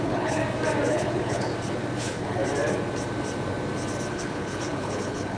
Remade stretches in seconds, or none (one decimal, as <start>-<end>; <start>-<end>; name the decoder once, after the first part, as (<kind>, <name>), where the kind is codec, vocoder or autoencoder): 0.0-0.4 (codec, HILCodec); 0.9-1.5; 2.0-2.4; 4.1-5.4